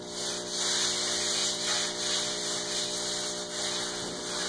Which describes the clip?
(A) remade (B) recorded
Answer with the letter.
B